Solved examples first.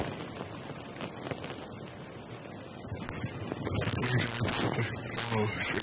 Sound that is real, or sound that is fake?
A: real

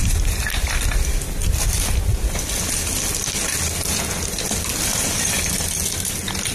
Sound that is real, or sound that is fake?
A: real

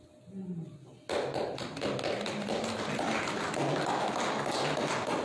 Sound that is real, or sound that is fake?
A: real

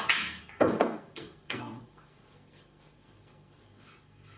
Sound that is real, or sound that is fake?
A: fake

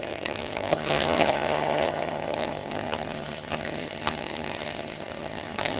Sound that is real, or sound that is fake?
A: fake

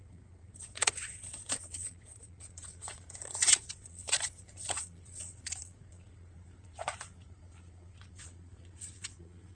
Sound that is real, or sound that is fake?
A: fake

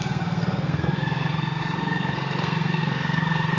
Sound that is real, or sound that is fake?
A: fake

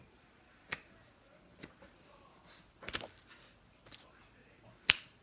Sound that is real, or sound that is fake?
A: real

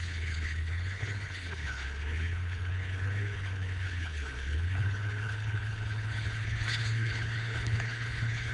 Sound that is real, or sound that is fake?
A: fake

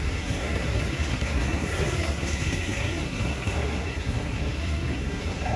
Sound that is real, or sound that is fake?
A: fake